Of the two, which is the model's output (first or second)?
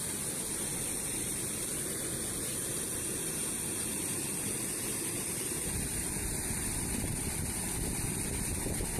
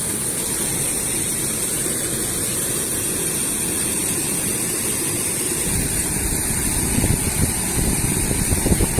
first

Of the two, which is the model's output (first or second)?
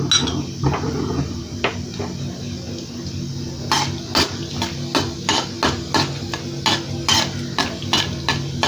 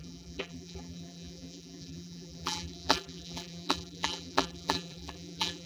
second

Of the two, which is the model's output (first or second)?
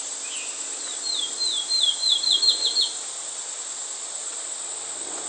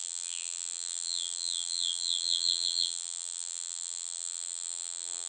second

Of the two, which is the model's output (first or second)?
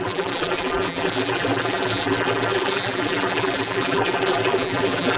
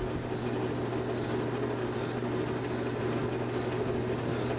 first